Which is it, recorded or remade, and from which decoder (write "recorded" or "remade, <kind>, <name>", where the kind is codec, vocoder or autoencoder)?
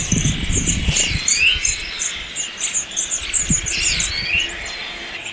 recorded